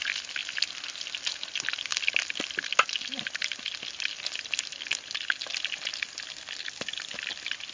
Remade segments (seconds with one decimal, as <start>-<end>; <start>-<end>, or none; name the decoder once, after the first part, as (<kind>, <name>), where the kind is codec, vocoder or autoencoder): none